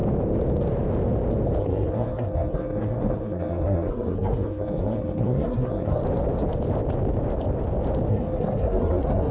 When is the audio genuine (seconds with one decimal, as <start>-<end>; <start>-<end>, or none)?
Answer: 0.0-1.6; 6.0-8.1